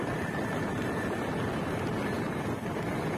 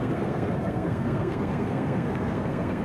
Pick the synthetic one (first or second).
second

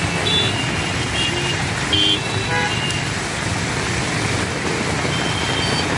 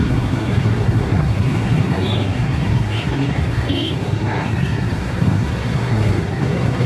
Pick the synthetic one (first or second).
second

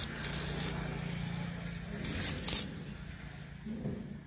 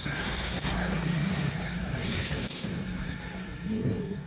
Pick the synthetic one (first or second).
second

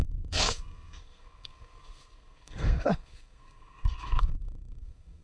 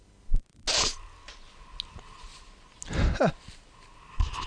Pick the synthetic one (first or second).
first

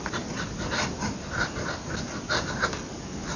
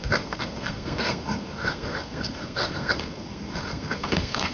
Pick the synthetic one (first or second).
second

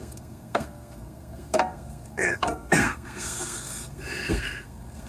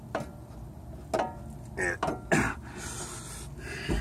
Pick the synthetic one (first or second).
first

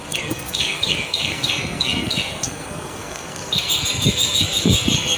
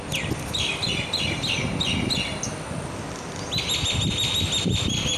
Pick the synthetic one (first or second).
first